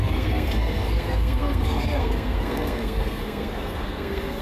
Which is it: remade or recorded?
remade